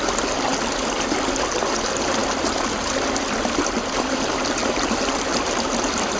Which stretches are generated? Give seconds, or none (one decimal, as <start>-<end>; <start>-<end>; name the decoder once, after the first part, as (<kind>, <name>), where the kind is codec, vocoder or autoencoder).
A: none